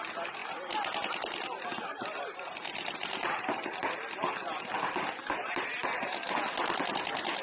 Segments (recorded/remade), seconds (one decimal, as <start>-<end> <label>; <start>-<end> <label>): 0.0-7.4 recorded

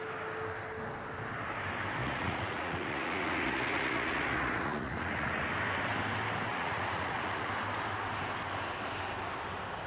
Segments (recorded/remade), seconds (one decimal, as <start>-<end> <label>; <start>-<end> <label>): 0.0-2.0 recorded; 2.0-5.5 remade; 5.5-6.5 recorded; 6.5-7.5 remade; 7.5-9.9 recorded

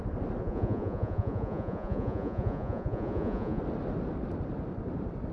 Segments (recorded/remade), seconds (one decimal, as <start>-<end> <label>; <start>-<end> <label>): 0.0-0.4 recorded; 0.4-3.6 remade; 3.6-5.3 recorded

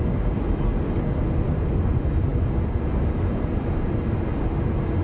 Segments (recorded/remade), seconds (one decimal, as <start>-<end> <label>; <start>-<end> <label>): 0.0-5.0 recorded

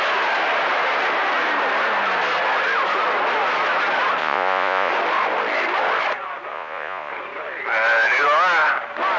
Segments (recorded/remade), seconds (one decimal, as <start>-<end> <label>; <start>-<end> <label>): 0.0-4.2 recorded; 4.2-4.9 remade; 4.9-6.5 recorded; 6.5-7.1 remade; 7.1-9.2 recorded

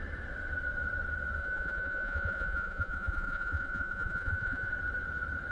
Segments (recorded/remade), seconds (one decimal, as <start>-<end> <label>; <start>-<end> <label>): 0.0-1.4 recorded; 1.4-4.7 remade; 4.7-5.5 recorded

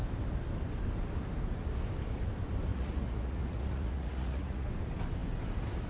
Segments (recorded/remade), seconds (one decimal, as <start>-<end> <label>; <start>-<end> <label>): 0.0-2.7 recorded; 2.7-4.7 remade; 4.7-5.9 recorded